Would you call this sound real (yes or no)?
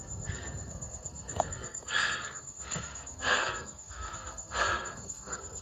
no